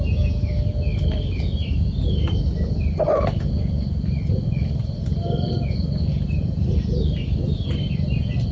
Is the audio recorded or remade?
recorded